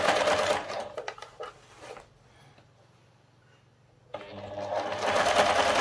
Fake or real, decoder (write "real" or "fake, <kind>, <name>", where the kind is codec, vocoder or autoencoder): real